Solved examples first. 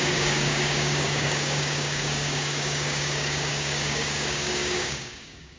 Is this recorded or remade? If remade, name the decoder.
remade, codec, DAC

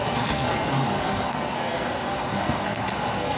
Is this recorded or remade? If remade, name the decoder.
remade, codec, SNAC